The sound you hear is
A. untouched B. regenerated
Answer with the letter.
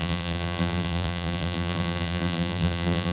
B